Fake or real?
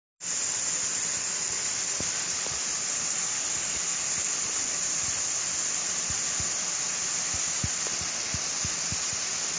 real